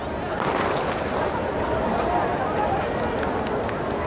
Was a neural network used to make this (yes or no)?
no